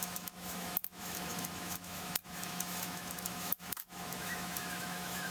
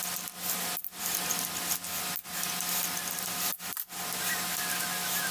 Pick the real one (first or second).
second